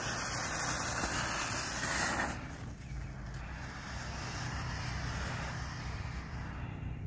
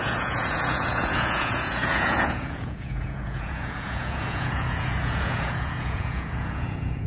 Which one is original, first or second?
first